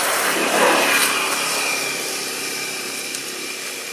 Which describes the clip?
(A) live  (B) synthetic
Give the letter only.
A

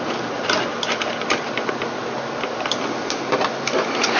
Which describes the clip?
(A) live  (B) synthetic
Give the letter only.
A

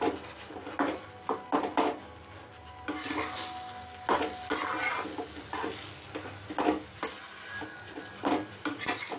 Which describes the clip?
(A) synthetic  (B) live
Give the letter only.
B